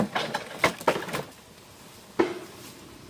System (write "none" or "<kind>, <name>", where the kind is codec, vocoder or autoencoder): none